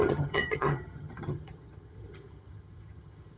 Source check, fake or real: fake